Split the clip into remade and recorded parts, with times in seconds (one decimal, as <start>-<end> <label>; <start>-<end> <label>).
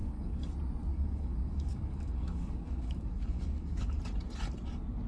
0.0-0.5 remade; 0.5-0.9 recorded; 0.9-4.0 remade; 4.0-5.1 recorded